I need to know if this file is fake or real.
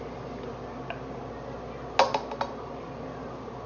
real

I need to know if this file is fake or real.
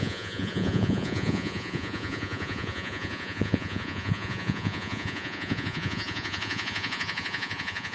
fake